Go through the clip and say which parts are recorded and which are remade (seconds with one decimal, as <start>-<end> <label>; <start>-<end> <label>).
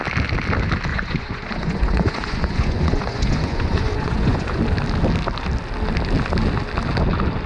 0.0-0.9 recorded; 0.9-4.6 remade; 4.6-7.5 recorded